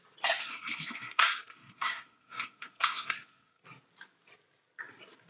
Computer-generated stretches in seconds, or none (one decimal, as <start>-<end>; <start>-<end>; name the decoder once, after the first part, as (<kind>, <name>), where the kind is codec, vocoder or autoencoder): 0.4-3.6 (codec, SNAC)